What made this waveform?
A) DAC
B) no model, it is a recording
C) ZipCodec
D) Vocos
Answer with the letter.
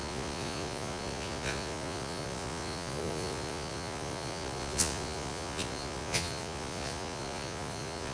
D